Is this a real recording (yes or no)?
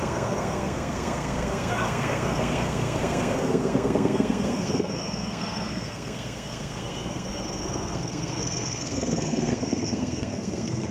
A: no